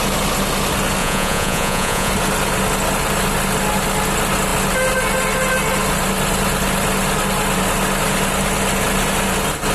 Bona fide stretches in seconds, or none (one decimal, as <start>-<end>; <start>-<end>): 0.0-1.0; 2.1-9.7